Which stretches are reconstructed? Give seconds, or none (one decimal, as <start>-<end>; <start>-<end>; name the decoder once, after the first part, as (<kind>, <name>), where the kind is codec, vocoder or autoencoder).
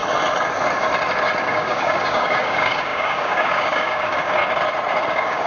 1.4-4.4 (codec, DAC); 5.1-5.5